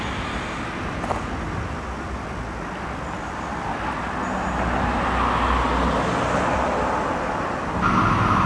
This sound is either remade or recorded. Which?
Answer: recorded